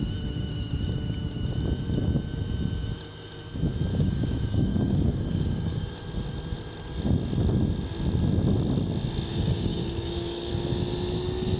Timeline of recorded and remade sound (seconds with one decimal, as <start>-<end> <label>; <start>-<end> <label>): 0.0-3.9 recorded; 3.9-5.9 remade; 5.9-9.3 recorded; 9.3-10.5 remade; 10.5-11.6 recorded